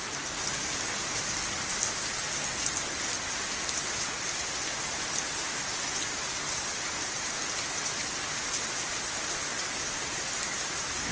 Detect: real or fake real